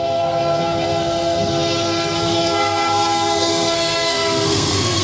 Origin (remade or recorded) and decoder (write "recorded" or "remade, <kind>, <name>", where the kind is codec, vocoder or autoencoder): remade, codec, SNAC